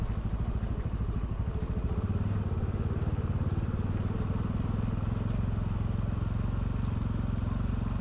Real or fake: real